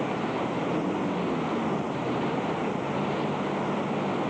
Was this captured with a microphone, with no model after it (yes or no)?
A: yes